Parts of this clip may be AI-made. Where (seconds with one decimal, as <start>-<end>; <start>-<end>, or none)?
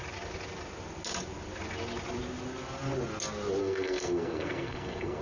3.6-5.2